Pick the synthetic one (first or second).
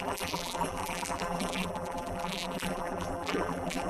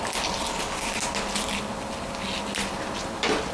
first